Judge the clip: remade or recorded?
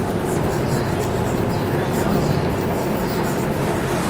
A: recorded